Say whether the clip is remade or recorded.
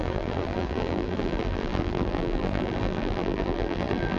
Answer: remade